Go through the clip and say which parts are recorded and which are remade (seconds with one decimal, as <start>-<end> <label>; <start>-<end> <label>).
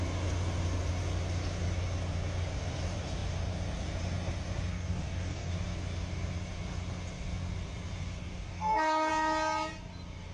0.0-4.7 recorded; 4.7-5.5 remade; 5.5-8.2 recorded; 8.2-9.1 remade; 9.1-10.3 recorded